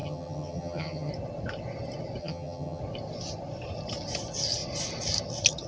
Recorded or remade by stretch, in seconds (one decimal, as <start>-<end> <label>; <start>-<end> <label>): 0.0-1.1 remade; 1.1-2.2 recorded; 2.2-2.8 remade; 2.8-5.7 recorded